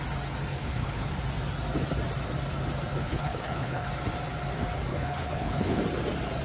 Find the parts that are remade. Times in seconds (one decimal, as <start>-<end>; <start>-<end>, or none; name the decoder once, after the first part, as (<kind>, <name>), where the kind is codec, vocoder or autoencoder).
0.5-1.1 (codec, HILCodec); 3.0-3.9; 4.9-5.8

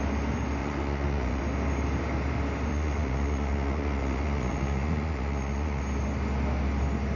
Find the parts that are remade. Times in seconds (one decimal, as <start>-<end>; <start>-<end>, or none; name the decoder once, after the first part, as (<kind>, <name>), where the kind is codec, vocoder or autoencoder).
0.6-1.4 (vocoder, Vocos); 2.7-5.8

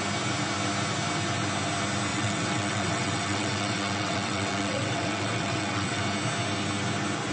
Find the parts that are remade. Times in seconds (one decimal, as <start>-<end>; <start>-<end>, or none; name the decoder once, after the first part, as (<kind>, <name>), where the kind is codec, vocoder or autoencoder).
2.1-6.0 (vocoder, WaveNeXt)

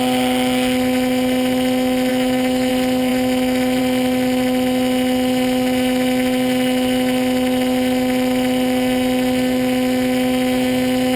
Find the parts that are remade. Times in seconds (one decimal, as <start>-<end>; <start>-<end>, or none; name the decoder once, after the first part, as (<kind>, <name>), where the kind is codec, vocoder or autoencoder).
2.1-2.7 (autoencoder, DAC-VAE)

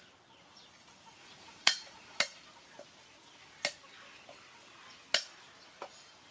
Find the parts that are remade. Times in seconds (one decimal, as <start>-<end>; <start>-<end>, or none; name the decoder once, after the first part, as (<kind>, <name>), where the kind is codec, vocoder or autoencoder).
1.2-2.2 (vocoder, Vocos)

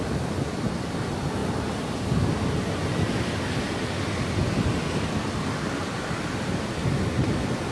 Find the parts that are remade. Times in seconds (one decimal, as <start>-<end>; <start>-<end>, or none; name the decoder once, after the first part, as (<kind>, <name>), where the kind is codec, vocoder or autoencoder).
none

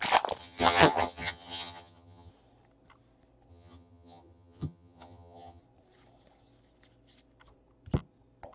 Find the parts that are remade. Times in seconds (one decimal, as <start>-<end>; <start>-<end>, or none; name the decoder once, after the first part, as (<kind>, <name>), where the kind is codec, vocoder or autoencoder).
0.4-2.3 (vocoder, HiFi-GAN); 3.5-5.6